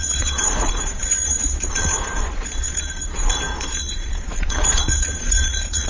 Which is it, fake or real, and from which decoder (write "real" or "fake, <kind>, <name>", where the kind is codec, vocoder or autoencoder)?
fake, vocoder, Vocos